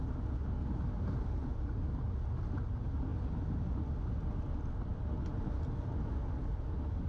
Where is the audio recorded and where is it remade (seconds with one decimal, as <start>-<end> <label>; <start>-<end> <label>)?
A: 0.0-7.1 recorded